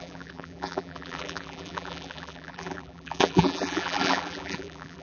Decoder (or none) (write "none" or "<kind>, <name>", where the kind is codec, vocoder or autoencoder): vocoder, BigVGAN v2